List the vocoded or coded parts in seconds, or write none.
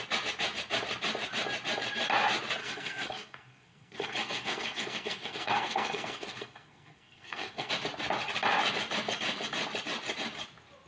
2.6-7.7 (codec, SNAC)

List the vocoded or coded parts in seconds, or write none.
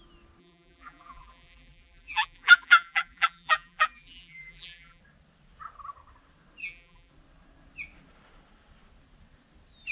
0.4-5.0 (vocoder, BigVGAN v2); 6.6-7.1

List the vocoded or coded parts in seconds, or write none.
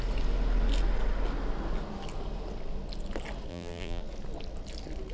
3.5-4.0 (vocoder, BigVGAN v2)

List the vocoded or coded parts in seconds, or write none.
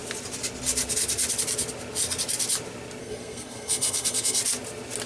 3.0-4.4 (codec, SNAC)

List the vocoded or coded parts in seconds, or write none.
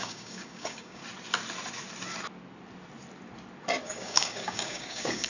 0.0-1.0 (codec, DAC); 3.8-5.3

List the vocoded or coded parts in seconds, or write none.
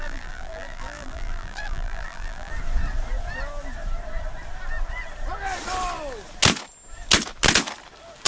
0.0-2.5 (vocoder, BigVGAN v2)